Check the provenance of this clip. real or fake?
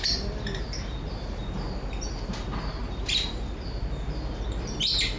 real